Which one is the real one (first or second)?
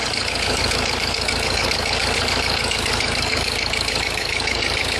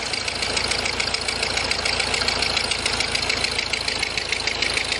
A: second